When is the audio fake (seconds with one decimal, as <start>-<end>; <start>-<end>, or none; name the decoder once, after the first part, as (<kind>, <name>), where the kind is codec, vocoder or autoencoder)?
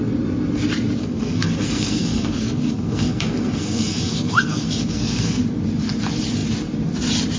1.0-5.4 (codec, SNAC)